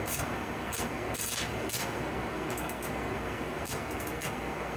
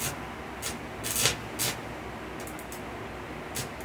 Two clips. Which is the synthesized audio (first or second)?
first